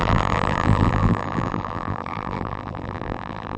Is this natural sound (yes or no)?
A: no